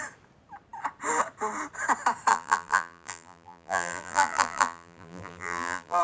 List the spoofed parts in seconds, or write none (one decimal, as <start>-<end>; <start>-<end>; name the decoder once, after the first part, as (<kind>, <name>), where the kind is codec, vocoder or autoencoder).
2.3-6.0 (vocoder, BigVGAN v2)